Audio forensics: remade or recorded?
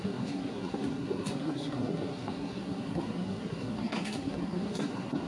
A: remade